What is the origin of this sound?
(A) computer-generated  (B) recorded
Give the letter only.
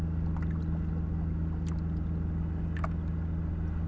B